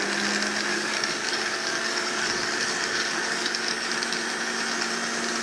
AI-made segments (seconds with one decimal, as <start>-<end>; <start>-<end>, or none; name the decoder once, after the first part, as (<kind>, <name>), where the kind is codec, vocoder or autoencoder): 0.7-3.9 (codec, DAC)